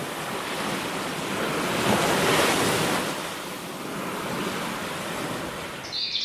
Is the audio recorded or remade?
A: recorded